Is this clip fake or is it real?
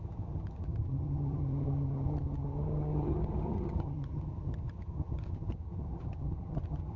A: fake